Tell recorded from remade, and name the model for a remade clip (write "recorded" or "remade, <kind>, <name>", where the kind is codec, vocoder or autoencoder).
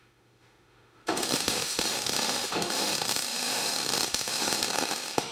remade, autoencoder, DAC-VAE